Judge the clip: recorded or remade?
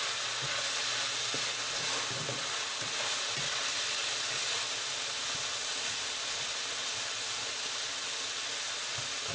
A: recorded